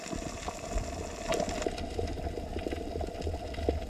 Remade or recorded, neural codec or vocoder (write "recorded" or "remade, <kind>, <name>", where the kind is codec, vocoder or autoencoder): recorded